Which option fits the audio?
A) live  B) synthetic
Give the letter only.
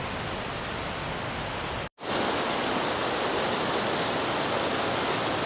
A